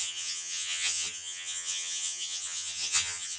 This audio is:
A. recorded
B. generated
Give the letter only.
B